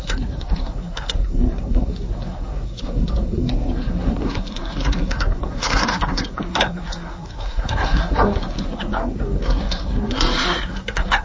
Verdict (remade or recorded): remade